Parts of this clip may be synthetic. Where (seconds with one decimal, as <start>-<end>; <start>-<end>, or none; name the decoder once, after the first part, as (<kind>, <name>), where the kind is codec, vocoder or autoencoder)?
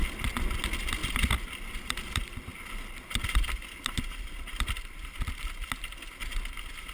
none